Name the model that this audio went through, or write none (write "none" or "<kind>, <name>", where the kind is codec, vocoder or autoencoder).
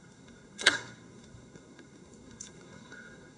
codec, SNAC